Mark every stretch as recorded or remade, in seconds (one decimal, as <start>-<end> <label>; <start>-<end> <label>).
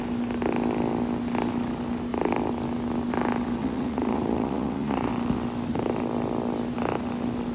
0.0-3.6 recorded; 3.6-5.1 remade; 5.1-7.5 recorded